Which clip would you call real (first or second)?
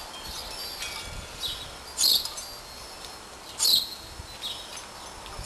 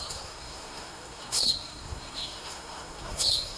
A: first